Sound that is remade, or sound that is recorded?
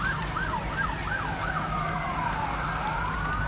recorded